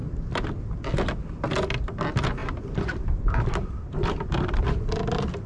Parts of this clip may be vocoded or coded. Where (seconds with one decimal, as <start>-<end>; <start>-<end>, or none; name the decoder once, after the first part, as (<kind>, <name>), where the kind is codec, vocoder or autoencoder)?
2.4-4.8 (vocoder, BigVGAN v2)

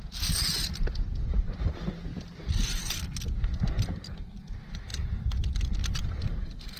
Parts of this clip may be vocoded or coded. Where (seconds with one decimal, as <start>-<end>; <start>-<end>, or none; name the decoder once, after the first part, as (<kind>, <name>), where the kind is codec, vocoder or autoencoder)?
none

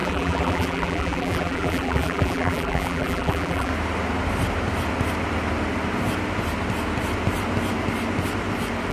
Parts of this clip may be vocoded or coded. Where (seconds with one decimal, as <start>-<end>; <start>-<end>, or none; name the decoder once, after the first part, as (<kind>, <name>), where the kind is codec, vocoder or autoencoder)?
0.0-3.7 (vocoder, BigVGAN v2)

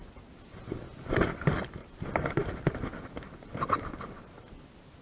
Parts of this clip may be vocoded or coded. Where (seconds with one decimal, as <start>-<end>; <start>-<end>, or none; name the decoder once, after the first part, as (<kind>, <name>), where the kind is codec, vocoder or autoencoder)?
none

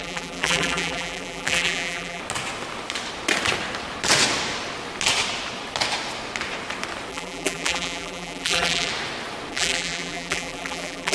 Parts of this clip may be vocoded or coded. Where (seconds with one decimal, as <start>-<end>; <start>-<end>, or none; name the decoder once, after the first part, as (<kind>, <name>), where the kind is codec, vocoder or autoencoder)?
0.0-2.2 (vocoder, BigVGAN v2); 7.1-8.9; 9.5-11.1

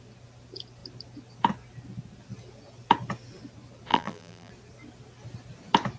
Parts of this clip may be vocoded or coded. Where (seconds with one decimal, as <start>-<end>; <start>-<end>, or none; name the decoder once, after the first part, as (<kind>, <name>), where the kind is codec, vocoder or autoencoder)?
3.9-4.5 (vocoder, BigVGAN v2)

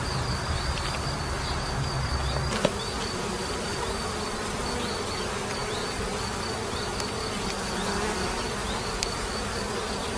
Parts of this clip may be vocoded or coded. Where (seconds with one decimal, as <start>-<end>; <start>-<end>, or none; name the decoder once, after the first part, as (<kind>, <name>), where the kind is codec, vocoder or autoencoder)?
8.6-9.6 (vocoder, BigVGAN v2)

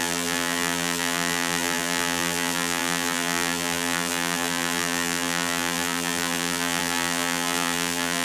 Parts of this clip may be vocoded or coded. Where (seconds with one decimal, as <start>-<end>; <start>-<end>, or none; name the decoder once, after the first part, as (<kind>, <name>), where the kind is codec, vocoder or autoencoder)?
0.0-8.2 (vocoder, BigVGAN v2)